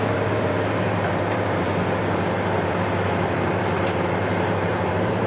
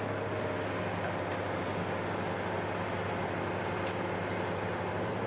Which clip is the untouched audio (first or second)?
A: second